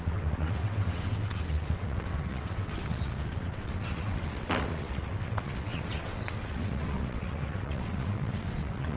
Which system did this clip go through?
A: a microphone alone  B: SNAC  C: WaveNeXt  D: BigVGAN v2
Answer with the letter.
C